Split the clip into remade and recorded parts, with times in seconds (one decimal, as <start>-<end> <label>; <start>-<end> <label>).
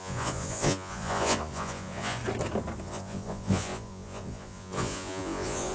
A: 0.0-2.2 remade; 2.2-2.8 recorded; 2.8-5.7 remade